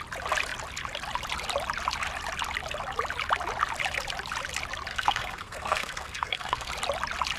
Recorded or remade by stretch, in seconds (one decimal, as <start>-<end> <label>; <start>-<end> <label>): 0.0-4.9 recorded; 4.9-6.7 remade; 6.7-7.4 recorded